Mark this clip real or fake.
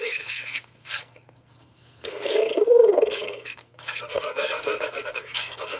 fake